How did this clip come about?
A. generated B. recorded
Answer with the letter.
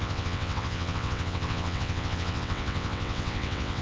A